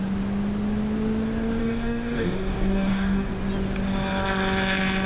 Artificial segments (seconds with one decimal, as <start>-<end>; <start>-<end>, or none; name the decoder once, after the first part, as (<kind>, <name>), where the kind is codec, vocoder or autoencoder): 1.6-3.3 (codec, DAC)